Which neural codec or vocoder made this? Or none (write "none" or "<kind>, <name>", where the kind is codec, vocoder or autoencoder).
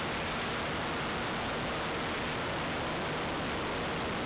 none